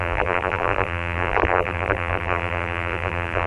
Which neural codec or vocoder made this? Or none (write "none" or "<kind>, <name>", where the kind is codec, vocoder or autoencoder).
vocoder, BigVGAN v2